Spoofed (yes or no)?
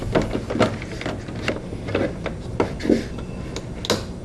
no